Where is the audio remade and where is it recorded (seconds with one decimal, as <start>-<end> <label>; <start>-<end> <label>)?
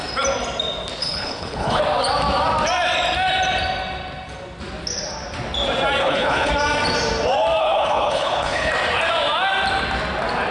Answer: 0.0-1.0 recorded; 1.0-1.8 remade; 1.8-6.0 recorded; 6.0-6.5 remade; 6.5-7.6 recorded; 7.6-8.7 remade; 8.7-10.5 recorded